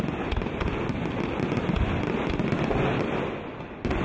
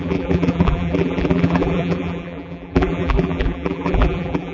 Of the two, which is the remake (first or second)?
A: second